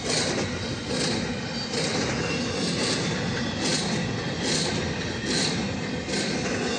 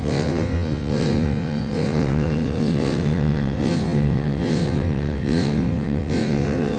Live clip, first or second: first